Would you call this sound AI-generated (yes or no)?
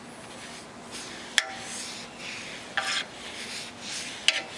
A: no